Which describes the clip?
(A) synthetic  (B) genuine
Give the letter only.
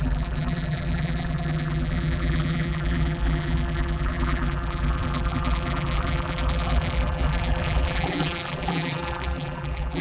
A